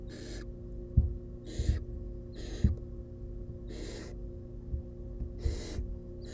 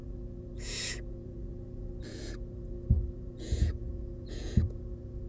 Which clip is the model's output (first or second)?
second